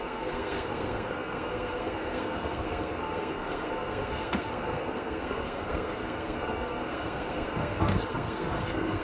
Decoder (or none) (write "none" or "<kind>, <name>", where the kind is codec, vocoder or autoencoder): codec, SNAC